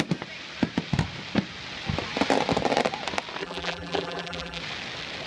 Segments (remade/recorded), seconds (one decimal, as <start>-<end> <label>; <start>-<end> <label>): 0.0-3.4 recorded; 3.4-4.6 remade; 4.6-5.3 recorded